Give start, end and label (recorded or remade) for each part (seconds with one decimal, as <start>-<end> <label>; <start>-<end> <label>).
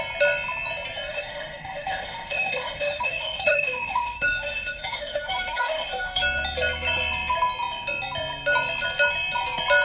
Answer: 0.0-1.1 recorded; 1.1-6.2 remade; 6.2-9.8 recorded